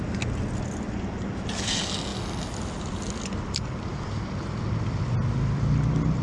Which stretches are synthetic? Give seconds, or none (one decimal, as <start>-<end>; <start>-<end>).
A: none